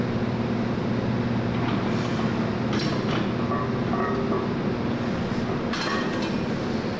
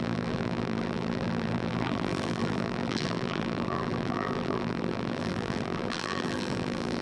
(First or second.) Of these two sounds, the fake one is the second